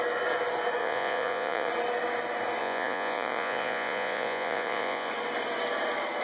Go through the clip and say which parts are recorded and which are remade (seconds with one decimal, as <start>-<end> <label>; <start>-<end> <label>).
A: 0.0-0.8 recorded; 0.8-1.7 remade; 1.7-2.6 recorded; 2.6-5.1 remade; 5.1-6.2 recorded